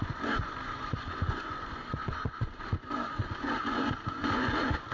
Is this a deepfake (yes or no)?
yes